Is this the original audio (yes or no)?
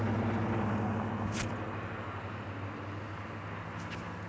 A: yes